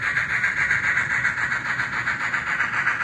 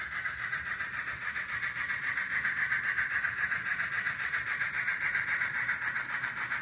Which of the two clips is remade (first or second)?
second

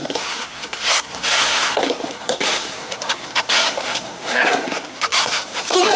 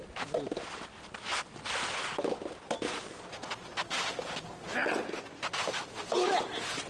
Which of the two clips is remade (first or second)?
first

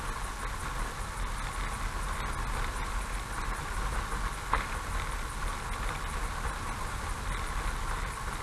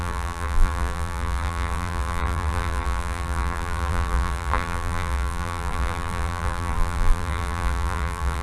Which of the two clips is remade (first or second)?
second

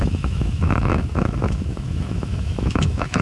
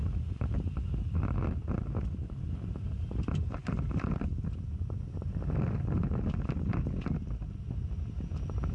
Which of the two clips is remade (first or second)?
first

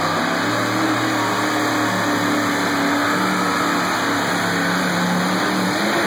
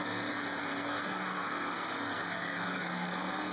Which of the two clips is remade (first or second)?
second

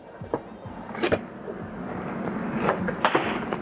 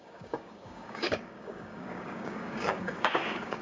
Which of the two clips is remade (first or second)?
second